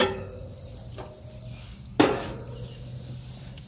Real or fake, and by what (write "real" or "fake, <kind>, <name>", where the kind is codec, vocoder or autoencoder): real